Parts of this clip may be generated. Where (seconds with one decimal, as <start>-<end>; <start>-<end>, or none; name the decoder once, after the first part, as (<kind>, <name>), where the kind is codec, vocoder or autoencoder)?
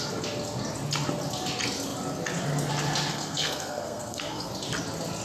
3.1-4.5 (codec, SNAC)